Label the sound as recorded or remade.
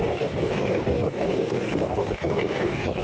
remade